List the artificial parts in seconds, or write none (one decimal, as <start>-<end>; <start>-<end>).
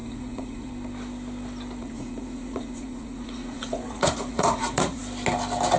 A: 0.0-0.7; 1.8-5.0